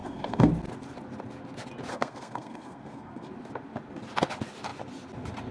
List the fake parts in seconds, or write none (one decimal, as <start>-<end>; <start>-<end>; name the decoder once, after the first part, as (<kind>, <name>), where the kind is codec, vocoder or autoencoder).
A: 0.0-0.5 (codec, SNAC); 1.9-3.3